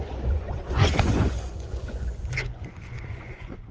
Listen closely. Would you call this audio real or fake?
fake